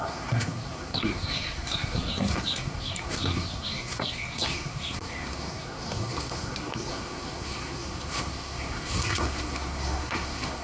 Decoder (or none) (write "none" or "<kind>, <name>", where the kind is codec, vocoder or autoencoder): codec, SNAC